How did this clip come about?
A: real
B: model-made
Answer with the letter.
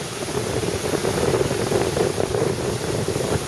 B